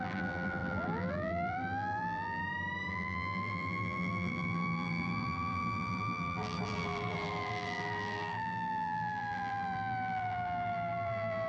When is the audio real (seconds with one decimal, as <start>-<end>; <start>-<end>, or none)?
2.4-2.9